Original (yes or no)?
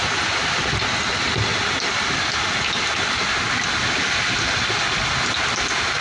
yes